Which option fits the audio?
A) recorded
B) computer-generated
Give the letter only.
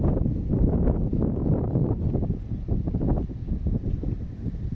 A